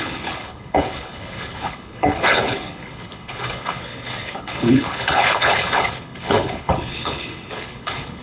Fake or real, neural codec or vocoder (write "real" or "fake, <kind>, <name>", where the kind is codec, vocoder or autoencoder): fake, codec, HILCodec